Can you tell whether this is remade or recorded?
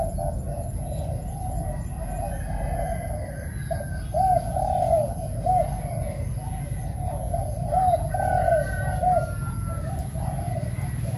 recorded